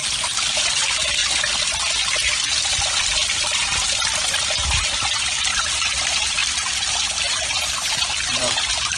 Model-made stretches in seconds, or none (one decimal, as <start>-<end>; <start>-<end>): 0.0-1.2; 4.4-9.0